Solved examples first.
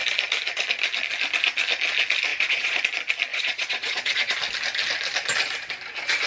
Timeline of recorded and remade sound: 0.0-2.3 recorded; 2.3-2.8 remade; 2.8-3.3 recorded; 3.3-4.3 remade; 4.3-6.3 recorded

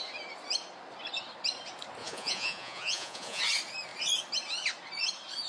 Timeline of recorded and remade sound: 0.0-2.0 recorded; 2.0-3.4 remade; 3.4-5.5 recorded